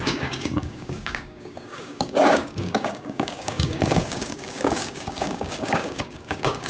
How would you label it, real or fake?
fake